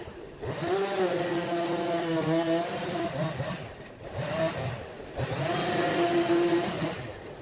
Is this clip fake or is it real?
real